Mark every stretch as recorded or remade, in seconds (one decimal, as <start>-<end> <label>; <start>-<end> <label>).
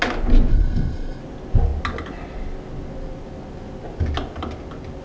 0.0-0.5 recorded; 0.5-1.2 remade; 1.2-5.0 recorded